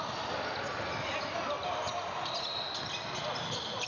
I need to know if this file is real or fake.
real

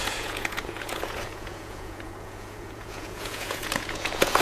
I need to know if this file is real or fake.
fake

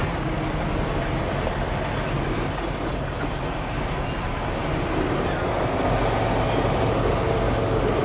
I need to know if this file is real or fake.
real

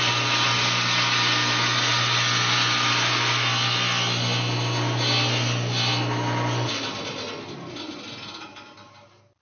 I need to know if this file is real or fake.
real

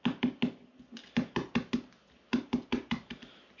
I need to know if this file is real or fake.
real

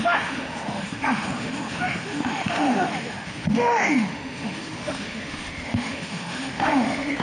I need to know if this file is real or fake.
fake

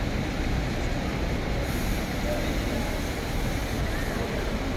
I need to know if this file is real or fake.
real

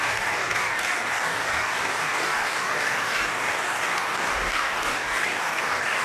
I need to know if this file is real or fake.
fake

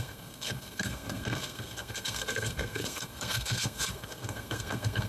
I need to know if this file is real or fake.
fake